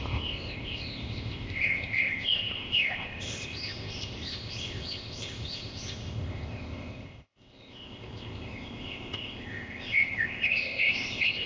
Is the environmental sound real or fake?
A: fake